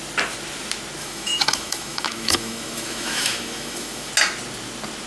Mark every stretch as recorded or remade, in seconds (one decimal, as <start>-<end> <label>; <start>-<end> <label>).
0.0-1.0 recorded; 1.0-4.1 remade; 4.1-5.1 recorded